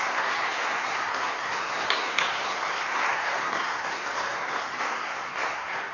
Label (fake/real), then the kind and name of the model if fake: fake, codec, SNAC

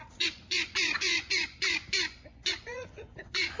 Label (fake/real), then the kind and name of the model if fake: fake, vocoder, Vocos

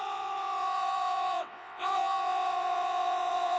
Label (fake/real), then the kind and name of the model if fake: fake, vocoder, WaveNeXt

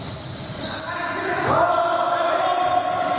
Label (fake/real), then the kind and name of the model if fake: real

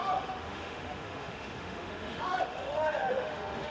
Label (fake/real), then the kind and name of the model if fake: fake, autoencoder, DAC-VAE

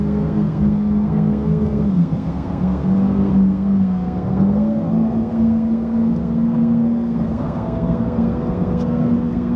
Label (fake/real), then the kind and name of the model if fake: fake, codec, SNAC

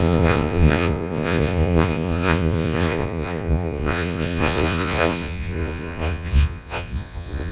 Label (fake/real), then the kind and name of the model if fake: fake, vocoder, Vocos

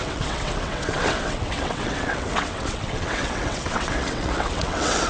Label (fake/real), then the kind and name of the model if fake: fake, vocoder, WaveNeXt